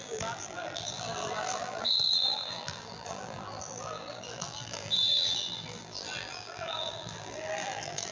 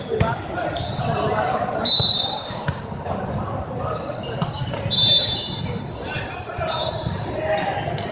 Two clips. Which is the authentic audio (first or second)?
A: second